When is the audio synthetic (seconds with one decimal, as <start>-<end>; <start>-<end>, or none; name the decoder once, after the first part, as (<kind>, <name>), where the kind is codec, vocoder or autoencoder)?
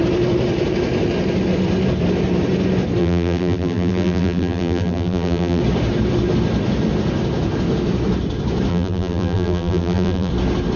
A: 3.0-5.6 (vocoder, BigVGAN v2); 8.7-10.3